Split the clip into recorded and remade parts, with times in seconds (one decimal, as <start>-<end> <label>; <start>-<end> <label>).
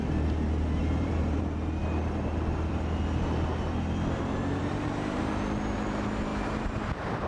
0.0-0.8 recorded; 0.8-1.4 remade; 1.4-4.6 recorded; 4.6-5.2 remade; 5.2-6.3 recorded; 6.3-6.8 remade; 6.8-7.3 recorded